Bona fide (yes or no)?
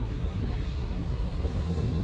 no